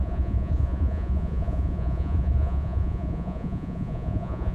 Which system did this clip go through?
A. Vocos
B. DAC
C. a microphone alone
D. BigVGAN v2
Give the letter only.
A